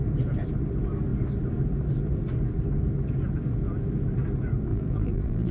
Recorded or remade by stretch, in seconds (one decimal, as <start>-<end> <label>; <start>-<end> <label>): 0.0-4.7 recorded; 4.7-5.5 remade